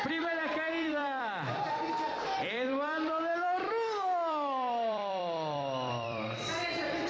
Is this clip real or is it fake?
fake